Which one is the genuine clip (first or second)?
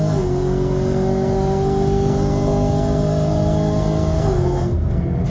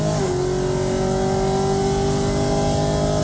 second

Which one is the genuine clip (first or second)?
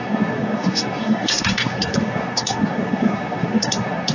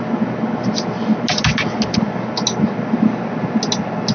second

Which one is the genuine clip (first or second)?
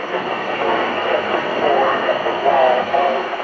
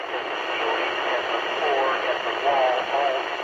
second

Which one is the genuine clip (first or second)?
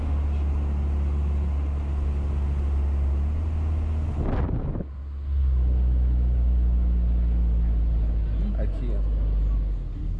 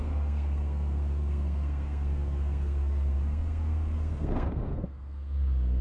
first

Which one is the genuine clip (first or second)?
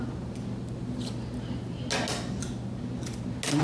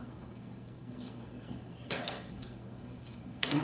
first